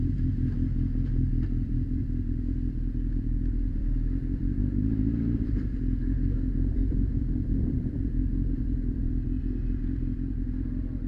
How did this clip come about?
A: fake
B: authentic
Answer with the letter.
A